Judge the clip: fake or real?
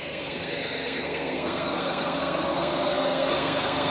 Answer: fake